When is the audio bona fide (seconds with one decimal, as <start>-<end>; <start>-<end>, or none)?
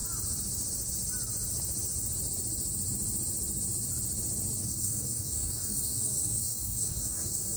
0.0-4.6